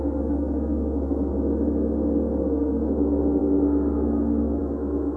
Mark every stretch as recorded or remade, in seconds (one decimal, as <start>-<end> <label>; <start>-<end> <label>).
0.0-1.3 remade; 1.3-2.4 recorded; 2.4-5.2 remade